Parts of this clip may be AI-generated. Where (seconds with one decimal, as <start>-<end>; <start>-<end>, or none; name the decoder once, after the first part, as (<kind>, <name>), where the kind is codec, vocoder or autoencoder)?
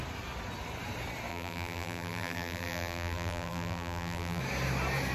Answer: 1.3-4.4 (vocoder, BigVGAN v2)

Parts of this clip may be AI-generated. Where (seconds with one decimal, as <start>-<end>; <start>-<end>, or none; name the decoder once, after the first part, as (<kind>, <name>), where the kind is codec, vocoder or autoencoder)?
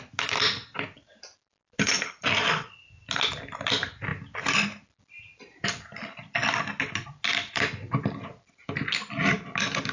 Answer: none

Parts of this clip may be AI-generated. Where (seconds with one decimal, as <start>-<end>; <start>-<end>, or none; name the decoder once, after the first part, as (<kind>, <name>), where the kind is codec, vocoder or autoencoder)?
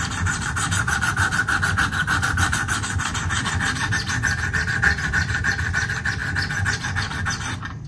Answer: 2.0-5.5 (vocoder, BigVGAN v2)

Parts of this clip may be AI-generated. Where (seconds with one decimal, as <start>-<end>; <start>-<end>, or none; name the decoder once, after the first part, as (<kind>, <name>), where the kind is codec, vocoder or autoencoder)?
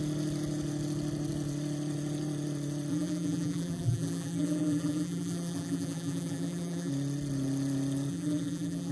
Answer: 2.9-6.9 (vocoder, BigVGAN v2); 8.1-8.9